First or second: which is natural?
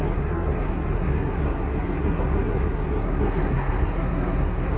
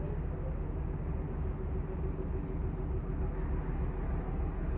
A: second